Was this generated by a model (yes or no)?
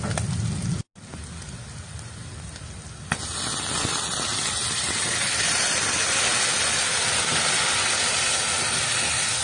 no